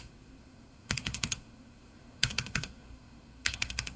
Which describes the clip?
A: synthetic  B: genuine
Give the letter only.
A